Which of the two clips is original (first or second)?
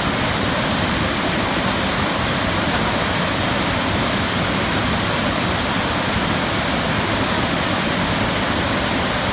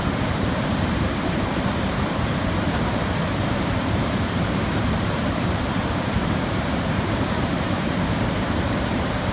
first